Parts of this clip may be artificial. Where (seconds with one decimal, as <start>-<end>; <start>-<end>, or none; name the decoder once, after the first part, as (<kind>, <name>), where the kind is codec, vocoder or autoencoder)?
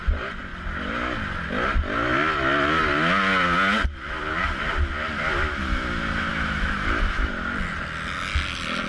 6.3-7.3 (autoencoder, DAC-VAE)